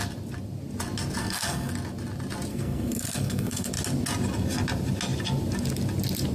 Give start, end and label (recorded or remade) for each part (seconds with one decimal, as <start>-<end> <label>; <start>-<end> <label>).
0.0-1.2 recorded; 1.2-1.7 remade; 1.7-2.5 recorded; 2.5-3.7 remade; 3.7-6.3 recorded